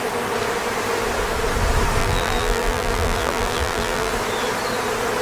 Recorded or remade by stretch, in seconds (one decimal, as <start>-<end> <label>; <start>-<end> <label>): 0.0-2.0 recorded; 2.0-4.1 remade; 4.1-5.2 recorded